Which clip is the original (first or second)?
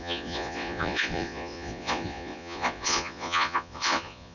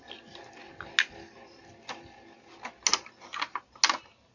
second